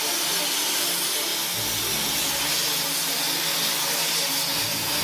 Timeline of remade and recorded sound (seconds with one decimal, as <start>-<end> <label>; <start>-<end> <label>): 0.0-5.0 recorded